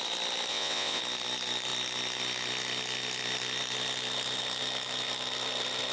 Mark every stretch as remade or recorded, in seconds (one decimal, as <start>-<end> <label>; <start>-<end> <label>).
0.0-0.5 recorded; 0.5-1.0 remade; 1.0-5.9 recorded